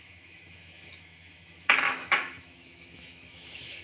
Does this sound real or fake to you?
fake